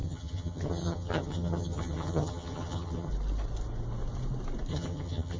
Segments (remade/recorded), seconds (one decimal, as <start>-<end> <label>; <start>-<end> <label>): 0.0-3.1 remade; 3.1-4.7 recorded; 4.7-5.4 remade